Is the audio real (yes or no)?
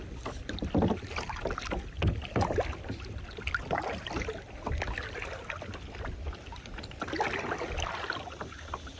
yes